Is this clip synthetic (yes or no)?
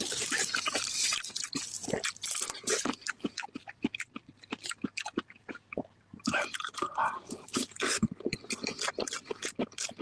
no